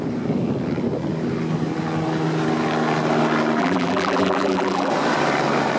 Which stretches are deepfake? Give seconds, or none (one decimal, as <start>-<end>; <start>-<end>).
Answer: 3.6-4.9